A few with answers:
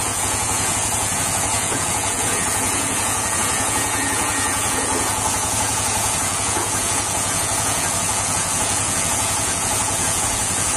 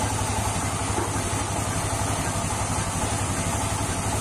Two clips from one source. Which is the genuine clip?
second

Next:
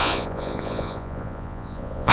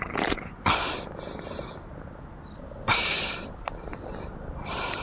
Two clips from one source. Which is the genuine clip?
second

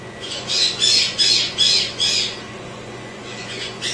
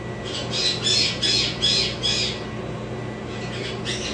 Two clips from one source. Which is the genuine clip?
second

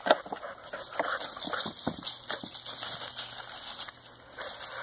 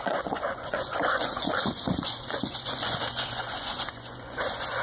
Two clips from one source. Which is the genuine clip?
first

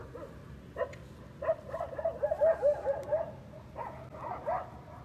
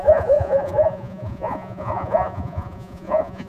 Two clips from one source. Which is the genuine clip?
first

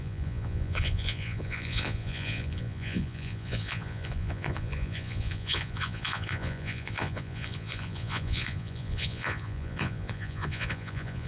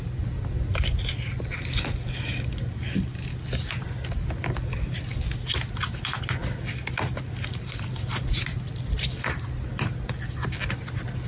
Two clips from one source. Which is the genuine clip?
second